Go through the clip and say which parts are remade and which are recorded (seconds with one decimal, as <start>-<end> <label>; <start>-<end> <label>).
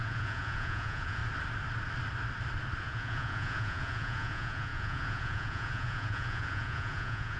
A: 0.0-1.2 remade; 1.2-2.8 recorded; 2.8-7.4 remade